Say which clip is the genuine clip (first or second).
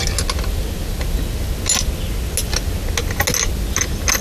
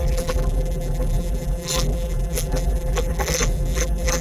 first